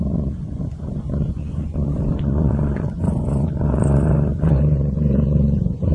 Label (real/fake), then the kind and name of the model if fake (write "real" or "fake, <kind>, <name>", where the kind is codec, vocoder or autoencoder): fake, vocoder, Vocos